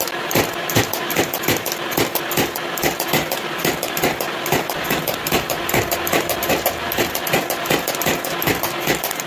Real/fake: real